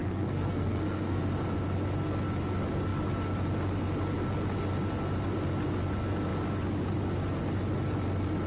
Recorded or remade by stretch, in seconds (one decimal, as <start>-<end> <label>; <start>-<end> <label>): 0.0-1.2 remade; 1.2-8.5 recorded